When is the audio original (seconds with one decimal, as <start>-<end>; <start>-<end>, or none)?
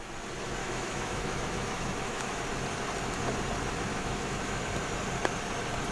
0.0-0.6; 2.4-3.9; 4.6-5.9